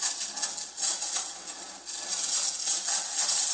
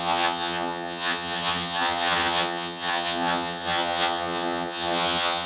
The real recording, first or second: first